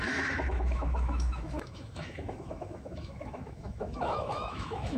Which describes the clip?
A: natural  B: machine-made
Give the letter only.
B